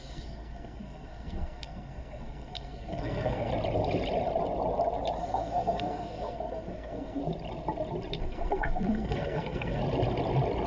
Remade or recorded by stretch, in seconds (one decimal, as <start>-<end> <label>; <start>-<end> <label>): 0.0-3.5 remade; 3.5-5.2 recorded; 5.2-7.2 remade; 7.2-8.2 recorded; 8.2-9.8 remade; 9.8-10.7 recorded